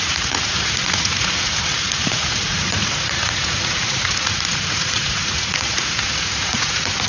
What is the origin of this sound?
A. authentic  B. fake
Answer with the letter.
B